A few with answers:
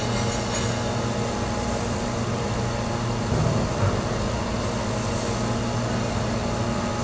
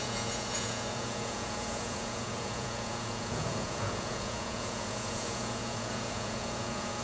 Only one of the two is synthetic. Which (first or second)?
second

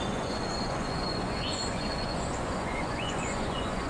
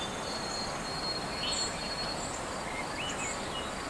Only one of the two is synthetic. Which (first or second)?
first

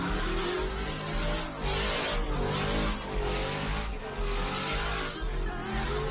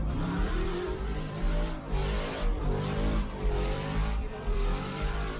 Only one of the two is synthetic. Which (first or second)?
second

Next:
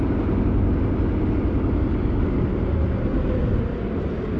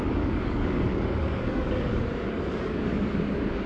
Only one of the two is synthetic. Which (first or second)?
second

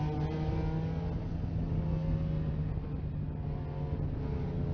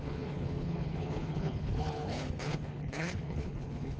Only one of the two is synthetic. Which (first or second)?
second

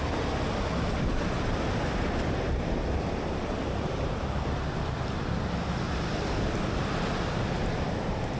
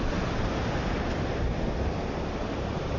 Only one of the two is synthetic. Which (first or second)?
first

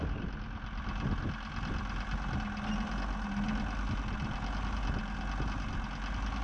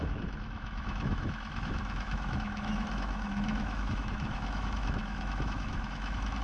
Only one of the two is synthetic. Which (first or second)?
second